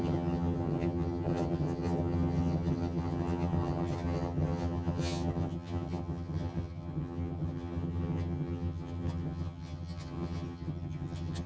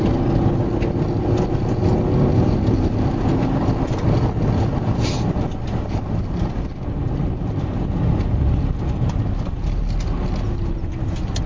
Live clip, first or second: second